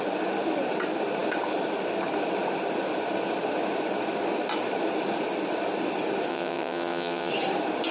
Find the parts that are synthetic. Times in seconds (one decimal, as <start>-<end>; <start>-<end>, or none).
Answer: 6.3-7.3